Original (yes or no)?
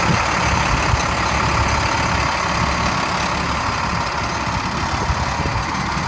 yes